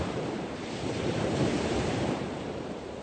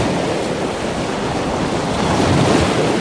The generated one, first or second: first